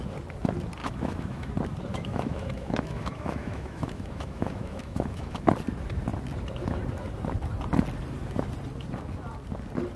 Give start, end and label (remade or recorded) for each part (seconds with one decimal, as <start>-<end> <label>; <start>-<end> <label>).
0.0-0.8 recorded; 0.8-1.5 remade; 1.5-1.9 recorded; 1.9-5.5 remade; 5.5-10.0 recorded